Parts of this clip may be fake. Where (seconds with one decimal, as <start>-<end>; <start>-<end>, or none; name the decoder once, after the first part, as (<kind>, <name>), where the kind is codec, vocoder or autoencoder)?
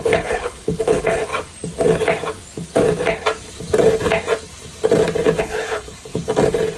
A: 0.0-1.3 (codec, HILCodec); 5.4-6.1